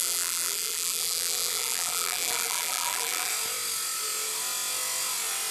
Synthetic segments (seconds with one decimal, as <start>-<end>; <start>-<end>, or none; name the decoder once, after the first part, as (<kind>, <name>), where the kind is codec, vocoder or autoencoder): 0.0-3.3 (vocoder, BigVGAN v2)